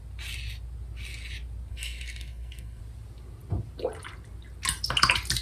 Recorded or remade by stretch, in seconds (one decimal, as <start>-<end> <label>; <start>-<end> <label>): 0.0-1.7 recorded; 1.7-2.8 remade; 2.8-5.4 recorded

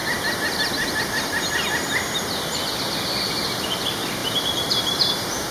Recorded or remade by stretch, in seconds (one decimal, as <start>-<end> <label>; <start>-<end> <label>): 0.0-4.2 recorded; 4.2-5.5 remade

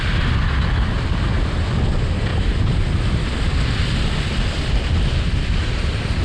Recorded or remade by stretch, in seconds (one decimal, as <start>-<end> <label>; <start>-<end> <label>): 0.0-6.2 recorded

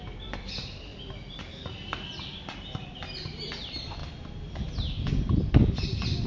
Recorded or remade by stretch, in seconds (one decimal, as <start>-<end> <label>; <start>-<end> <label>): 0.0-6.3 recorded